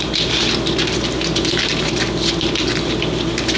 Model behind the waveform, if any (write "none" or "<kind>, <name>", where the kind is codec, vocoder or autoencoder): none